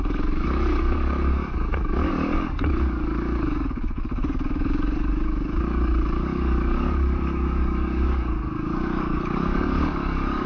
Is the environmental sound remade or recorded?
remade